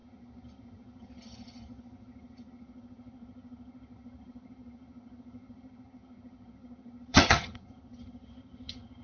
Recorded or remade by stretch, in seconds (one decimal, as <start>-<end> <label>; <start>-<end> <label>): 0.0-9.0 remade